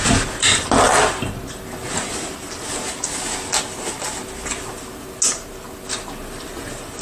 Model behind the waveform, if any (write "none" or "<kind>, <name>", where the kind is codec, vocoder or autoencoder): none